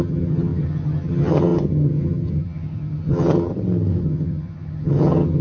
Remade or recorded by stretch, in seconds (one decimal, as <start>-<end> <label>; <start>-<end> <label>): 0.0-3.5 remade; 3.5-4.0 recorded; 4.0-5.4 remade